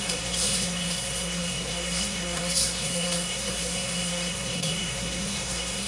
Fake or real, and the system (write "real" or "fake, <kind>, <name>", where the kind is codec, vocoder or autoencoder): fake, codec, SNAC